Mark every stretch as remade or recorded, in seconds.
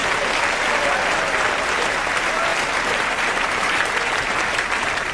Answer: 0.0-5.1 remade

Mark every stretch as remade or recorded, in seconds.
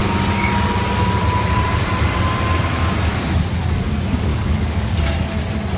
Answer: 0.0-4.3 recorded; 4.3-5.0 remade; 5.0-5.8 recorded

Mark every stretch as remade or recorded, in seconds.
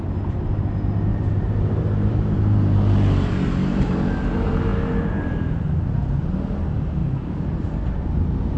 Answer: 0.0-1.1 recorded; 1.1-4.0 remade; 4.0-7.0 recorded; 7.0-8.6 remade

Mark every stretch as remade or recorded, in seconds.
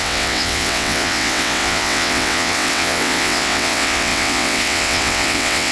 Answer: 0.0-5.7 remade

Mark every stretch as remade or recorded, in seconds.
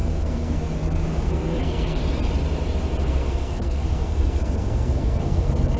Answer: 0.0-2.0 remade; 2.0-3.0 recorded; 3.0-5.8 remade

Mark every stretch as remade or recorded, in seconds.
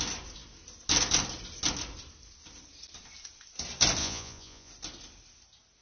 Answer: 0.0-4.0 recorded; 4.0-4.7 remade; 4.7-5.8 recorded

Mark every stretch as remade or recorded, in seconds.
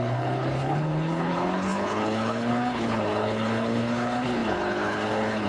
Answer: 0.0-5.5 remade